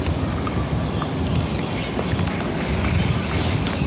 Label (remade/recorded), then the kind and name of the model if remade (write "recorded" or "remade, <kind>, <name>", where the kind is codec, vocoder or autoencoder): recorded